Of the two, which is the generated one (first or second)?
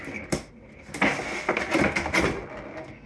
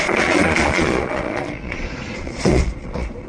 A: second